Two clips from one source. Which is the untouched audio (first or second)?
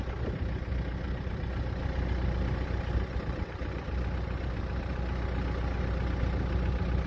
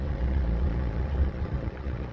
first